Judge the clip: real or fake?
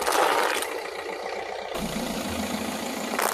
real